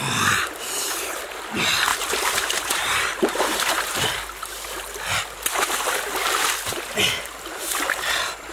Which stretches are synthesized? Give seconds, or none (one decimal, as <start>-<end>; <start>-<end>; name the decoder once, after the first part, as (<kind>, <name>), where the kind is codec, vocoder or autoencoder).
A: 1.9-3.9 (vocoder, BigVGAN v2)